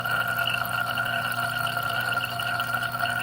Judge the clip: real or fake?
real